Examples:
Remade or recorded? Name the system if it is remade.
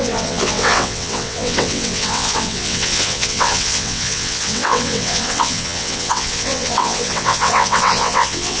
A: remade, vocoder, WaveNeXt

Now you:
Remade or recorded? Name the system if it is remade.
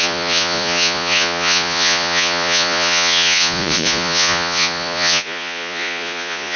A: remade, vocoder, Vocos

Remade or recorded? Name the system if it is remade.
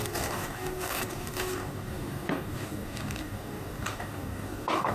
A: remade, codec, DAC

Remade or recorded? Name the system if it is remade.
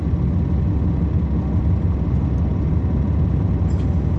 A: recorded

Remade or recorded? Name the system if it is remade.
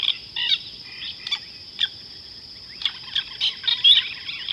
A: recorded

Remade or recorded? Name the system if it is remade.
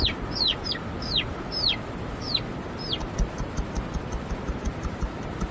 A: recorded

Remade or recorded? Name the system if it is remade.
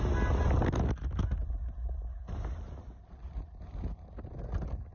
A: recorded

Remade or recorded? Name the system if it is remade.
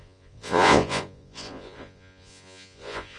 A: remade, vocoder, Vocos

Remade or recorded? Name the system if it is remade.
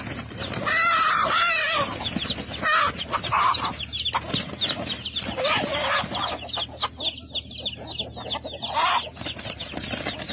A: recorded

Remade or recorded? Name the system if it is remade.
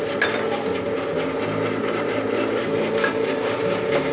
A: recorded